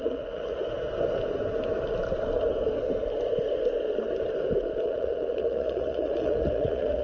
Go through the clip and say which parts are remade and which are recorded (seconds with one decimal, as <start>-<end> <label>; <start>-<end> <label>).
0.0-0.6 remade; 0.6-4.8 recorded; 4.8-7.0 remade